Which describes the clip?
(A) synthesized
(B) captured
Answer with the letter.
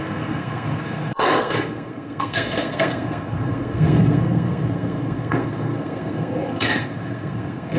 A